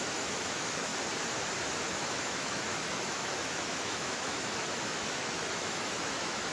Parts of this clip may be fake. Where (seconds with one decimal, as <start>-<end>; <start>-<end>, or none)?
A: 0.0-0.9; 1.9-6.5

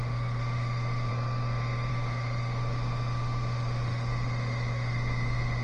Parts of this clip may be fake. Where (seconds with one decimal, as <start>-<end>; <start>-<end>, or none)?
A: 0.0-1.1; 1.9-5.6

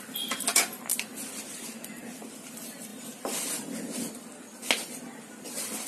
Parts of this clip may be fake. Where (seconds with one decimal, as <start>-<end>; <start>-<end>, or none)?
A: none

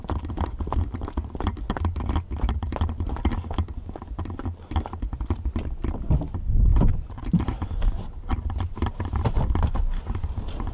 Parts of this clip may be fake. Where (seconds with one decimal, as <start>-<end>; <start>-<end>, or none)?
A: none

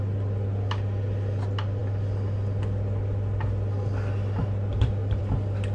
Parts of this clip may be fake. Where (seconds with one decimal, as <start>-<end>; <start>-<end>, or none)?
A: none

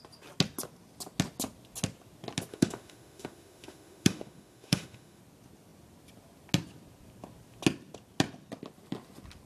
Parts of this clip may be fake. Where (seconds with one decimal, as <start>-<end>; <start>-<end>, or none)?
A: 2.5-5.2

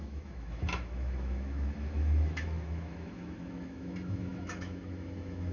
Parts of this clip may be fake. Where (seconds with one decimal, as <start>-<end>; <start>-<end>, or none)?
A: 0.0-5.5

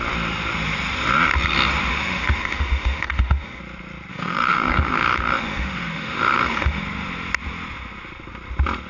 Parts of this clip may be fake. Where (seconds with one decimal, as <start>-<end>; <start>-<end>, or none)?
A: 1.9-3.6; 4.1-6.8